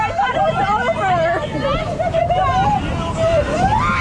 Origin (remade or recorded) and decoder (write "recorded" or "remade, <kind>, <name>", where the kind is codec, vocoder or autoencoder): recorded